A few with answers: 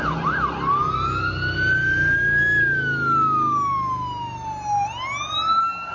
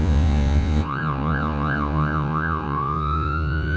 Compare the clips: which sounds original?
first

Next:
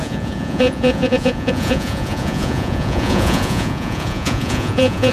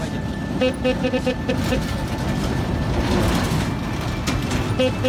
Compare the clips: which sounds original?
second